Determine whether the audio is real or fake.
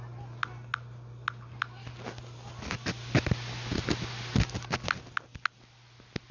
real